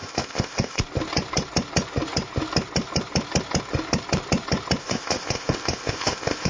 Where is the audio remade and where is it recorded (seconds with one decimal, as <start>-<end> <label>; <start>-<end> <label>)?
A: 0.0-0.8 remade; 0.8-4.8 recorded; 4.8-6.5 remade